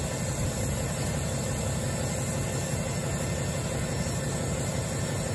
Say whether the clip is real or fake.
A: real